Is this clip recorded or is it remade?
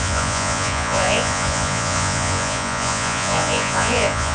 remade